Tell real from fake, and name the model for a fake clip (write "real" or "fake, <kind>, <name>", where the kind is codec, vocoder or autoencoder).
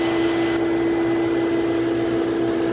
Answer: real